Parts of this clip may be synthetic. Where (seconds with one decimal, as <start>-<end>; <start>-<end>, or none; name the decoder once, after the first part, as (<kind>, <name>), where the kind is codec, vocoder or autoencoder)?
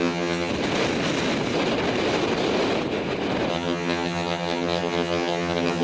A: 0.0-0.5 (vocoder, HiFi-GAN); 3.5-5.8